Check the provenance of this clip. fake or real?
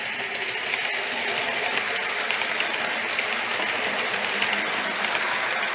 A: real